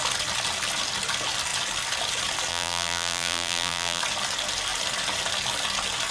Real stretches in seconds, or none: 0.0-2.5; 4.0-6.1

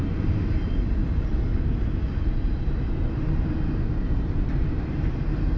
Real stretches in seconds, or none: 1.0-4.4